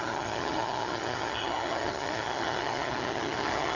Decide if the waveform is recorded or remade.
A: remade